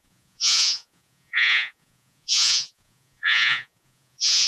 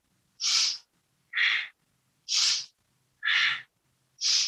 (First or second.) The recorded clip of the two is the second